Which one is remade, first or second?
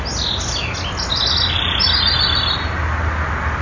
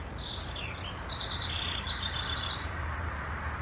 second